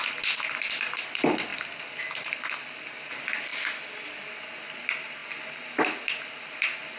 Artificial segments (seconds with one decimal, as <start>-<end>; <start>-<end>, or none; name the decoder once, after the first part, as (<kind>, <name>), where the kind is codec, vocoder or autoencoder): none